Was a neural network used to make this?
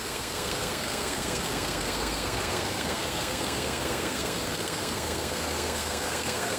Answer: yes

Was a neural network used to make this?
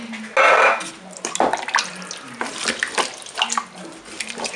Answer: no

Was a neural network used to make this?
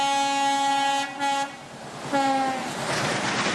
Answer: no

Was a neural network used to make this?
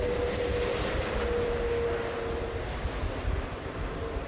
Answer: no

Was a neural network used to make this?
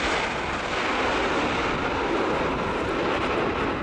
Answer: no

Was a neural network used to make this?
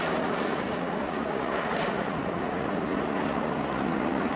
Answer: yes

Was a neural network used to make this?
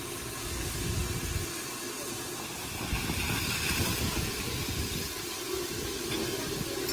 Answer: no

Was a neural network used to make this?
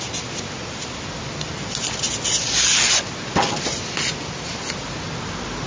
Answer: no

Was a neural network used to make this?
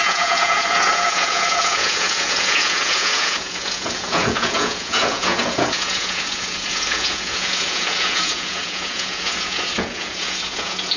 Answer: yes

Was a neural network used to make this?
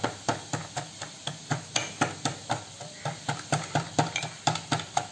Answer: no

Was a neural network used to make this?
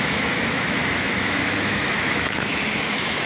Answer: yes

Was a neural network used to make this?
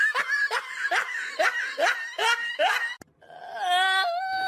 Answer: no